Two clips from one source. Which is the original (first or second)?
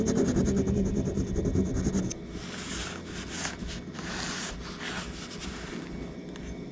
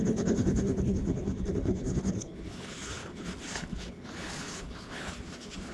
first